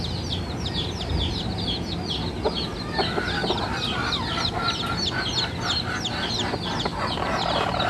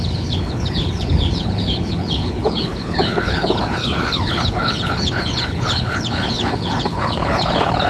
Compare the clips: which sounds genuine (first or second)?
first